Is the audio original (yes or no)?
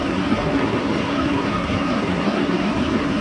no